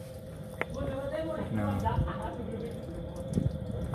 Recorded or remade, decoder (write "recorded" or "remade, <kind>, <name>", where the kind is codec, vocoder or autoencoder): recorded